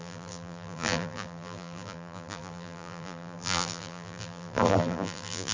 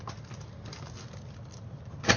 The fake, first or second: first